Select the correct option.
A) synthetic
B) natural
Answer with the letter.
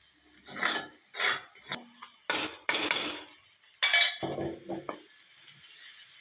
B